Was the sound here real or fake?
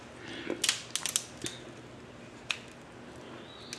real